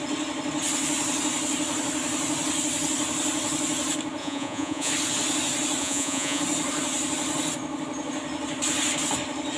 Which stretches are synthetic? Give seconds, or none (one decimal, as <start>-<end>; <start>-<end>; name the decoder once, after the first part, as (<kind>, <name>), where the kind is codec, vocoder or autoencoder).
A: 4.2-4.9 (vocoder, Vocos); 5.8-6.4